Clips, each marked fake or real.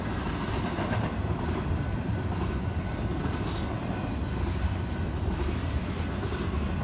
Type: real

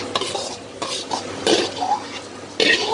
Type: real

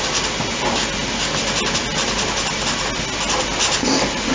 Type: real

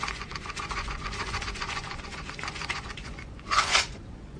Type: fake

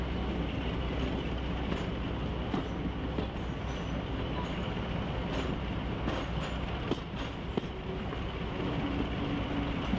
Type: real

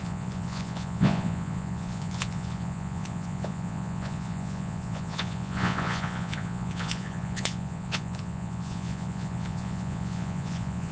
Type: fake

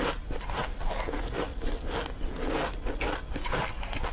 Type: real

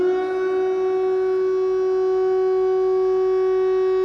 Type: real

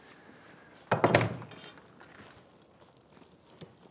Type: real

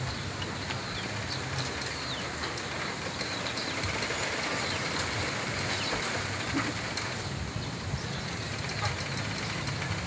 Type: real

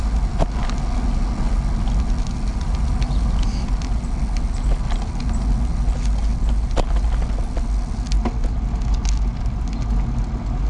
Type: real